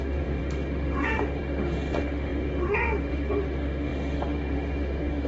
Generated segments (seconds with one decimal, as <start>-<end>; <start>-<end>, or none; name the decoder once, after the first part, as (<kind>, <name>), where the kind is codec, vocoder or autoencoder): 0.0-5.3 (autoencoder, DAC-VAE)

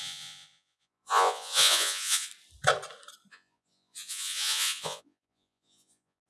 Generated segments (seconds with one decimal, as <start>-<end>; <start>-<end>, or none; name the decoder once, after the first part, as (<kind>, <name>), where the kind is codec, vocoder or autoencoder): 0.0-2.3 (vocoder, Vocos); 3.3-6.3